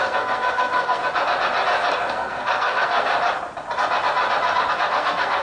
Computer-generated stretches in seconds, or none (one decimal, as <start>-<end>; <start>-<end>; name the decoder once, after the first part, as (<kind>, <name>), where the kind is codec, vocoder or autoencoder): 0.0-1.0 (codec, SNAC); 1.9-3.1; 4.7-5.4